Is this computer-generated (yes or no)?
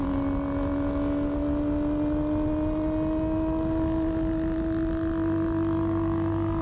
no